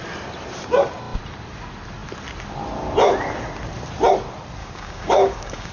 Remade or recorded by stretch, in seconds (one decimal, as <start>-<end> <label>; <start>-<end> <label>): 0.0-4.6 recorded; 4.6-5.7 remade